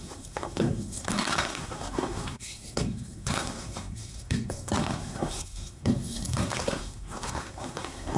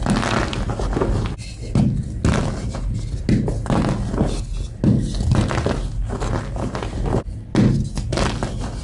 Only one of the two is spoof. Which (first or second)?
first